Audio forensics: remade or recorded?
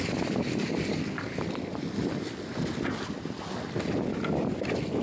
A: recorded